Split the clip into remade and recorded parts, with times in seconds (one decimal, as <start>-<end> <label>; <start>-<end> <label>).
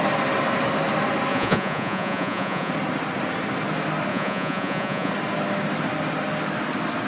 0.0-1.3 recorded; 1.3-2.7 remade; 2.7-4.1 recorded; 4.1-5.1 remade; 5.1-7.1 recorded